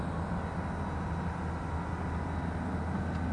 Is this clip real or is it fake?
real